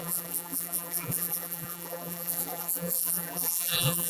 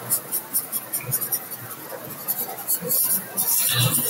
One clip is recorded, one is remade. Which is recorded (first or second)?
second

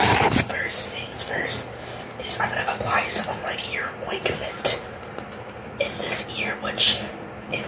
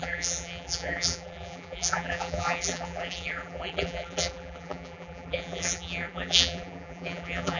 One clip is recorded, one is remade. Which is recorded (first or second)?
first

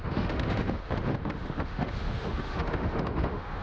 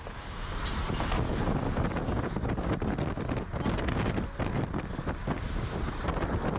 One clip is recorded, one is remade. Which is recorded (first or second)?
second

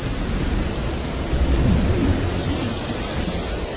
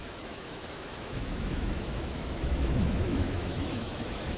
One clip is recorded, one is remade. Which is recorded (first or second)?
first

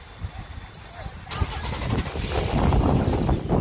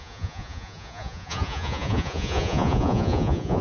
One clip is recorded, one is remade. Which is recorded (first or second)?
first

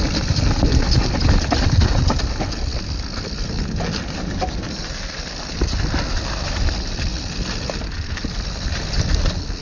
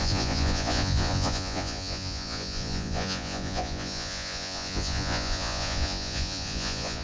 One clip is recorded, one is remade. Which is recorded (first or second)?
first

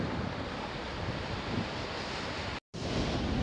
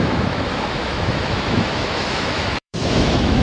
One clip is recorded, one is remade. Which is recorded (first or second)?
first